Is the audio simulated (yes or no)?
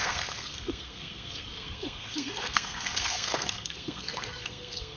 yes